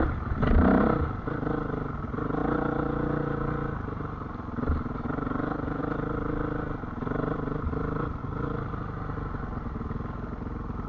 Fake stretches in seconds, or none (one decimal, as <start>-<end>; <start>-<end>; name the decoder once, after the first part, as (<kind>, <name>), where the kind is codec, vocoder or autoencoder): none